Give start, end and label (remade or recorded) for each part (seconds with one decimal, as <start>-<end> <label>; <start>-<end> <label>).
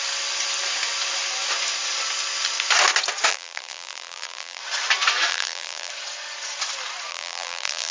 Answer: 0.0-3.3 recorded; 3.3-4.6 remade; 4.6-5.3 recorded; 5.3-5.9 remade; 5.9-7.1 recorded; 7.1-7.9 remade